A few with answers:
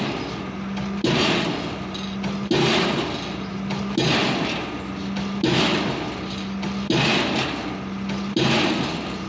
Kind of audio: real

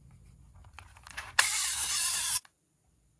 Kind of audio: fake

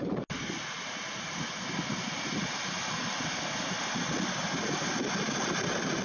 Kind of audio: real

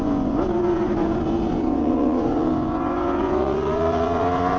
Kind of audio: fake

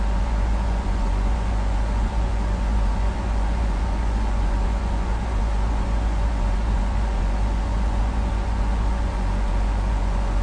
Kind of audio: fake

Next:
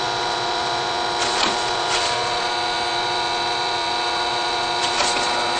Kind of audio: fake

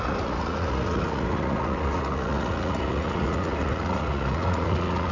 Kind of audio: fake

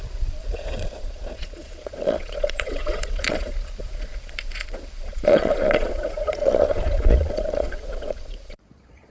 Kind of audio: fake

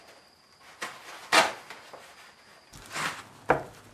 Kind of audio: real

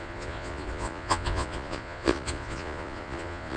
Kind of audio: fake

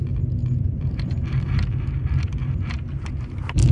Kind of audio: real